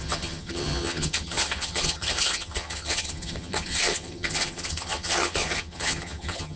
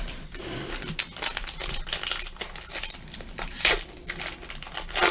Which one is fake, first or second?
first